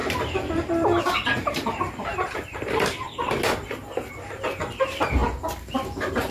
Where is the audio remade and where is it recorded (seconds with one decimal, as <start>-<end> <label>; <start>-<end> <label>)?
0.0-1.0 remade; 1.0-2.1 recorded; 2.1-3.3 remade; 3.3-6.3 recorded